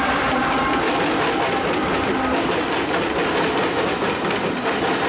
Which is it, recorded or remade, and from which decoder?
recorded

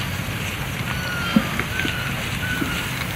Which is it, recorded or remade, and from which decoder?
recorded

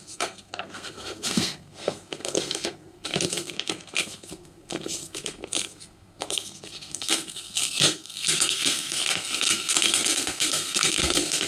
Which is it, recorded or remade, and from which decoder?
remade, codec, SNAC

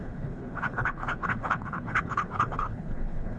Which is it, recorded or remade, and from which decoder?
remade, codec, HILCodec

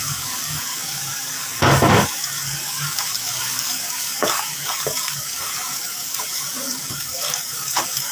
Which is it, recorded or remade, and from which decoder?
remade, codec, DAC